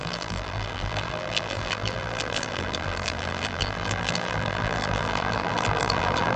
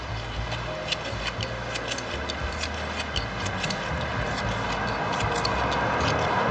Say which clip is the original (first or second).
second